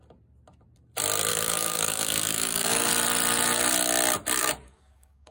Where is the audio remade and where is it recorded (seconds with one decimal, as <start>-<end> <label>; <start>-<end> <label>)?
0.0-1.3 recorded; 1.3-2.9 remade; 2.9-4.4 recorded; 4.4-5.3 remade